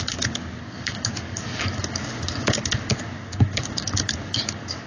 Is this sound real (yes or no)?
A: no